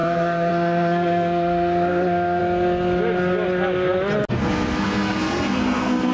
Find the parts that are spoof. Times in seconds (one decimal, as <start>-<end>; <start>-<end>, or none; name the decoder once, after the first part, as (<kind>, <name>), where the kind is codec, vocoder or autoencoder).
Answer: 0.0-2.4 (codec, SNAC); 4.3-6.1

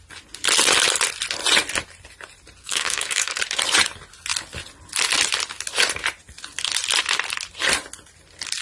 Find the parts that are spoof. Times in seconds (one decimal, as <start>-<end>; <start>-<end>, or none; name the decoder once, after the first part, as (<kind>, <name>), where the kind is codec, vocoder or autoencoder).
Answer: 2.6-3.4 (codec, SNAC)

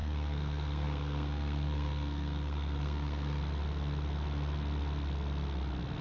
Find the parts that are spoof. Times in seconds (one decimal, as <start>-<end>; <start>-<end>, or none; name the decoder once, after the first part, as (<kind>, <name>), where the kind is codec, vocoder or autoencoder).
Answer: 0.0-3.4 (codec, SNAC)